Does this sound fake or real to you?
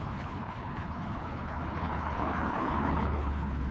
fake